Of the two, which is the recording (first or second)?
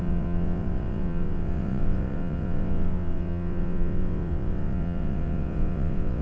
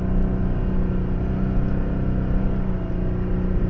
second